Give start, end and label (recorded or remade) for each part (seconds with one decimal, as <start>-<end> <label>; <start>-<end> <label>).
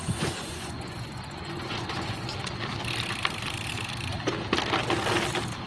0.0-2.6 remade; 2.6-5.7 recorded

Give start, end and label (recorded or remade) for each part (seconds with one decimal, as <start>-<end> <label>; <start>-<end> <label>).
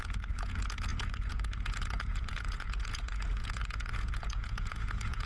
0.0-5.3 remade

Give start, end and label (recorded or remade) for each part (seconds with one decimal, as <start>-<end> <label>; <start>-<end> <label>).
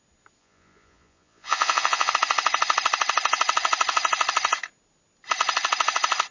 0.0-0.4 recorded; 0.4-2.1 remade; 2.1-6.3 recorded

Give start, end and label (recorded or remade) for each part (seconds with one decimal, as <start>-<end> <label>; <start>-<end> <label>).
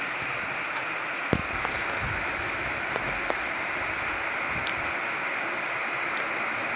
0.0-6.8 recorded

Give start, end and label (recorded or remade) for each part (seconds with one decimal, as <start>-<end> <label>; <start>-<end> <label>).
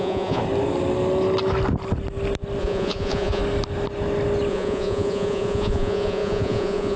0.0-0.4 remade; 0.4-2.6 recorded; 2.6-3.4 remade; 3.4-4.5 recorded; 4.5-7.0 remade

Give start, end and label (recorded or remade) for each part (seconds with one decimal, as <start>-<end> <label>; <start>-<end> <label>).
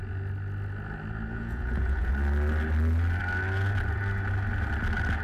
0.0-1.3 recorded; 1.3-2.1 remade; 2.1-5.2 recorded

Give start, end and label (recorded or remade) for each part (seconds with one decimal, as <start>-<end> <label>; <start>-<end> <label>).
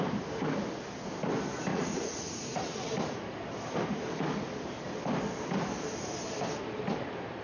0.0-1.7 recorded; 1.7-2.9 remade; 2.9-7.4 recorded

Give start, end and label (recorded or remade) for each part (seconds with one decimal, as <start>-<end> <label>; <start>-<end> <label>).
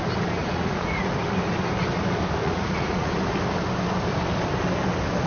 0.0-0.4 recorded; 0.4-1.1 remade; 1.1-2.4 recorded; 2.4-3.1 remade; 3.1-5.3 recorded